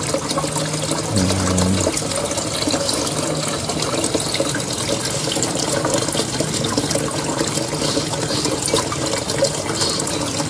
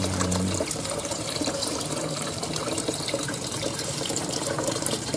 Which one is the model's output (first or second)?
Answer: second